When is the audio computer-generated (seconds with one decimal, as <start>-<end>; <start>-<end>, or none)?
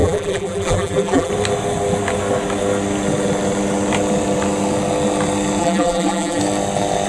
0.0-1.3; 5.6-6.4